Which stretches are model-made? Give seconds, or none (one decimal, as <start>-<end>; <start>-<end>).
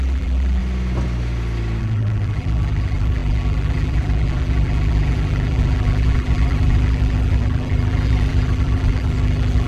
0.0-0.6; 1.8-9.7